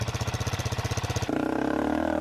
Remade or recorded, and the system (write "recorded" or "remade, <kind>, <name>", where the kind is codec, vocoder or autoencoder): recorded